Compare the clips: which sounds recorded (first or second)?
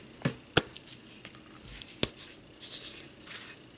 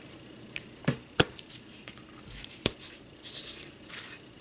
first